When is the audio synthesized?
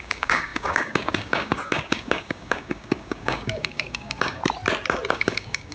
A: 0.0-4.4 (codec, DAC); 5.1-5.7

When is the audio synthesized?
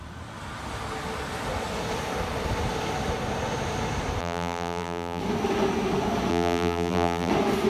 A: 4.2-5.2 (vocoder, BigVGAN v2); 6.3-7.3